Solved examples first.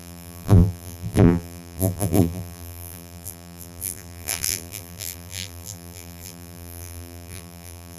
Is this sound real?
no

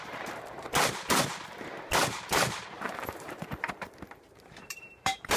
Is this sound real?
no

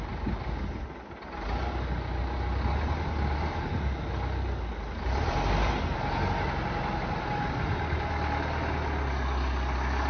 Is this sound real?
yes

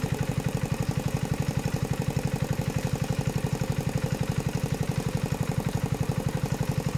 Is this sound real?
no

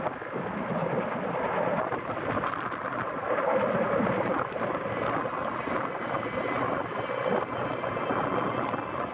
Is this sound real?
yes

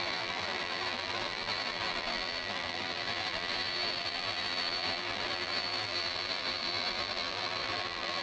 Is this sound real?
no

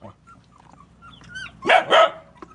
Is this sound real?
yes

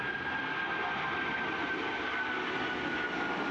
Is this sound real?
yes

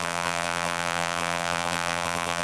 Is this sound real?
no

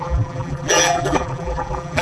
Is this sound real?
no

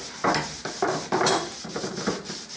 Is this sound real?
no